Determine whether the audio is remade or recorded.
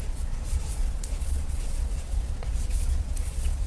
remade